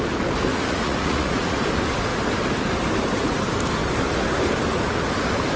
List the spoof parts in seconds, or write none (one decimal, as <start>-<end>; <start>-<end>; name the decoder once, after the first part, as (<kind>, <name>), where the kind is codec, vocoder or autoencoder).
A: 0.5-1.6 (vocoder, Vocos)